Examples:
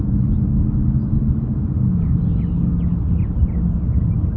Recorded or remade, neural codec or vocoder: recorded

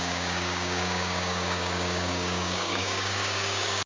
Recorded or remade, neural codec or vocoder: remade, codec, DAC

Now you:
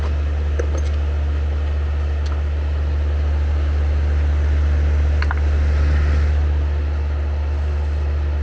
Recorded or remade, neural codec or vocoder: recorded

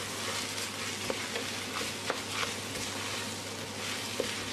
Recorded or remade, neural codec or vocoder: recorded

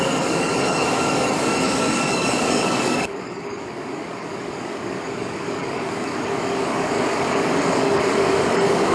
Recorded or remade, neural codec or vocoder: remade, codec, DAC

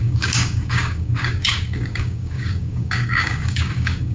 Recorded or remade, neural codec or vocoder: remade, codec, DAC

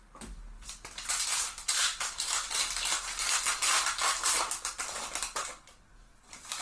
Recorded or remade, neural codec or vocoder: recorded